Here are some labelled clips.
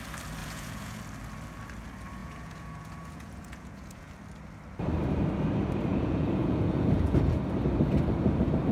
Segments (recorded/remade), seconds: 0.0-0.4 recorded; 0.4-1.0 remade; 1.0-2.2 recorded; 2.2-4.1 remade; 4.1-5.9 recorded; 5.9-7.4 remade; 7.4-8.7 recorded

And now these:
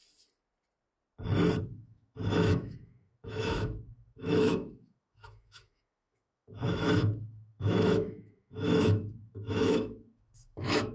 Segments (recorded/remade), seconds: 0.0-1.6 recorded; 1.6-10.9 remade

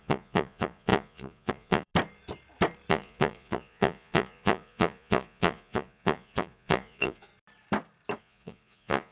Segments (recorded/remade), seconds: 0.0-1.9 remade; 1.9-2.9 recorded; 2.9-7.3 remade; 7.3-8.2 recorded; 8.2-9.1 remade

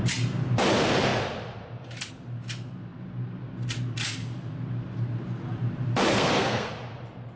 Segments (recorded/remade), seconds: 0.0-6.1 recorded; 6.1-6.7 remade; 6.7-7.4 recorded

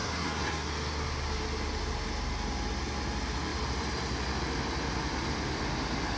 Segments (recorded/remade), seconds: 0.0-0.7 remade; 0.7-6.2 recorded

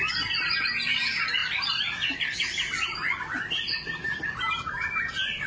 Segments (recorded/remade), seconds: 0.0-1.4 recorded; 1.4-4.7 remade; 4.7-5.5 recorded